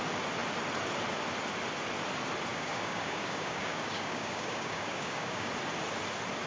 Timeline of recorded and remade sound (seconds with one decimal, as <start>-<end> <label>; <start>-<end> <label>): 0.0-2.5 recorded; 2.5-5.5 remade; 5.5-6.5 recorded